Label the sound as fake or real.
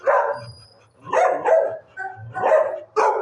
fake